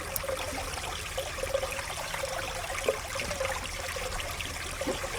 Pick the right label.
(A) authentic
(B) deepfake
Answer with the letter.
A